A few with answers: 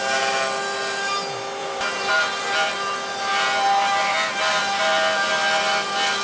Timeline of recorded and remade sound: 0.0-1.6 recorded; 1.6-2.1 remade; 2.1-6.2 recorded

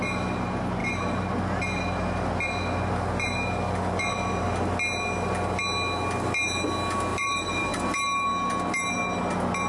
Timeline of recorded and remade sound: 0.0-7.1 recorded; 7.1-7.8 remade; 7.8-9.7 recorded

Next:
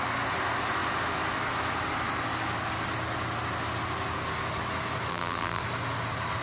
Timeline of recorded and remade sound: 0.0-5.1 recorded; 5.1-5.6 remade; 5.6-6.4 recorded